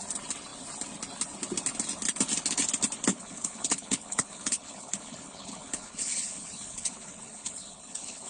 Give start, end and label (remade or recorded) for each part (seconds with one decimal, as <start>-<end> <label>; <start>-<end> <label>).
0.0-3.1 recorded; 3.1-8.3 remade